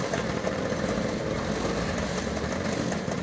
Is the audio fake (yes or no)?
no